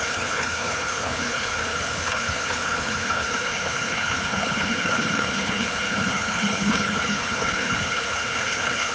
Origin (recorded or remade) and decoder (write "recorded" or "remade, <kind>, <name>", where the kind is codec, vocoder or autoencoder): remade, codec, HILCodec